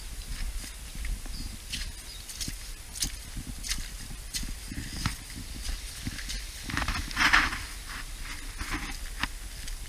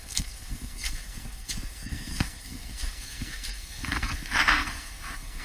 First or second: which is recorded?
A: first